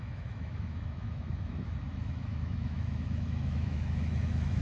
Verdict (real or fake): fake